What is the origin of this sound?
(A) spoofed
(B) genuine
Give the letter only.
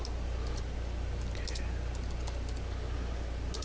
B